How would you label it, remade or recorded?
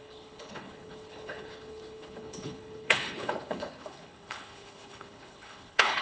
remade